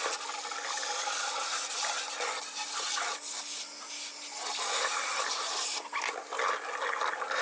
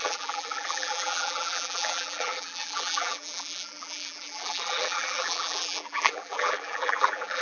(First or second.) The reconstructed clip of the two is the second